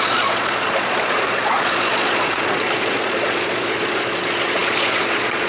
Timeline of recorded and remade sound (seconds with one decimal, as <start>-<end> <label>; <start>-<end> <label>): 0.0-5.5 remade

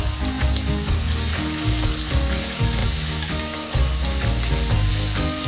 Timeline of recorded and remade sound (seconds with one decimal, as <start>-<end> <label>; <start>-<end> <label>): 0.0-3.8 remade; 3.8-4.9 recorded; 4.9-5.5 remade